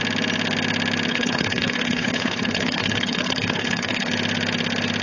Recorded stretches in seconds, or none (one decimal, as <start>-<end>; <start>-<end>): 0.0-1.1; 4.1-5.0